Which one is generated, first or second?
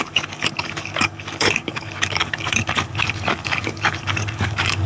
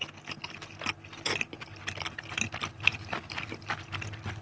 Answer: first